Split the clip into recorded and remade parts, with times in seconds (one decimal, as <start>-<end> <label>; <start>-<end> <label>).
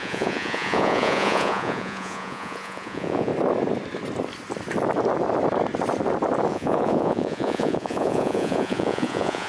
0.0-3.3 remade; 3.3-6.5 recorded; 6.5-9.5 remade